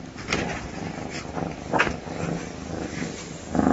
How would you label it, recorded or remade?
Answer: recorded